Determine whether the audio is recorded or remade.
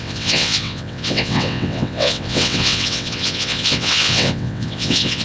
remade